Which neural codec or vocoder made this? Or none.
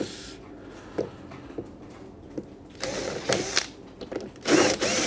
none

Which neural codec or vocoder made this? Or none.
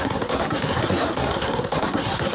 codec, SNAC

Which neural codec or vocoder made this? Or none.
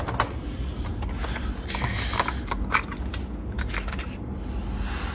none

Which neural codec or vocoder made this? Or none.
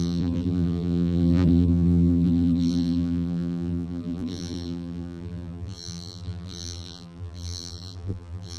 vocoder, BigVGAN v2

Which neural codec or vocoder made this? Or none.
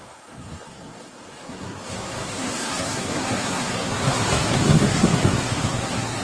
codec, SNAC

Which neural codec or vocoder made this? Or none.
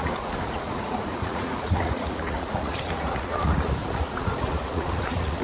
vocoder, Vocos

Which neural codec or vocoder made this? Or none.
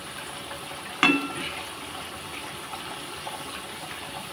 none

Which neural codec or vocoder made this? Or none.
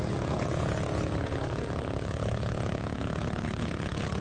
vocoder, Vocos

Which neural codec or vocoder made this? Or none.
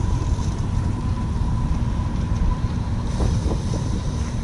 vocoder, BigVGAN v2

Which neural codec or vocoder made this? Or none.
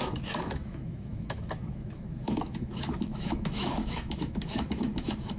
autoencoder, DAC-VAE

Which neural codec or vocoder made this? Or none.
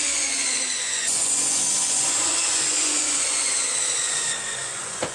vocoder, Vocos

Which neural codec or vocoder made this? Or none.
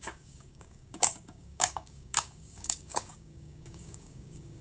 codec, DAC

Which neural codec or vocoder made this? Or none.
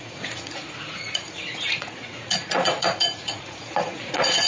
vocoder, Vocos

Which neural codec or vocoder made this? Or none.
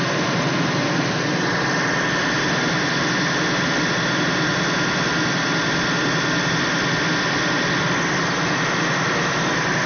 none